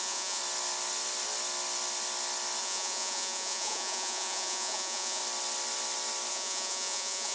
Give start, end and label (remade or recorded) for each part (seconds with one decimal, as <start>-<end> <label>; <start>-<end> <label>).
0.0-0.4 remade; 0.4-2.6 recorded; 2.6-5.2 remade; 5.2-6.3 recorded; 6.3-7.3 remade